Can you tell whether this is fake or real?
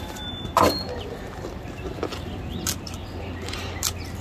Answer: real